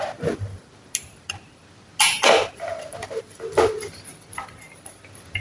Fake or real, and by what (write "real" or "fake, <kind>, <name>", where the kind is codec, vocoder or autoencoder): real